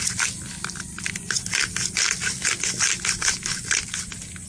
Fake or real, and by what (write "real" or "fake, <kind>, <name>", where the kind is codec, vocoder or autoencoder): real